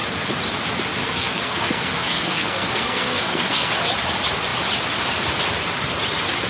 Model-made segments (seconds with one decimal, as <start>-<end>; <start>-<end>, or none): 1.0-3.7